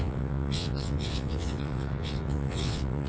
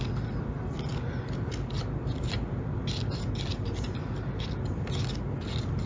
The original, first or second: second